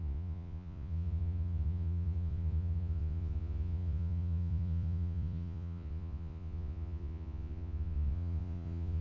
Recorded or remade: remade